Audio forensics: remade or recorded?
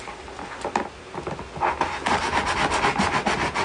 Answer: recorded